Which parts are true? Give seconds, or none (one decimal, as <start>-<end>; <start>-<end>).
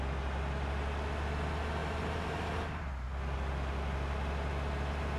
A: 0.0-1.8; 2.9-5.2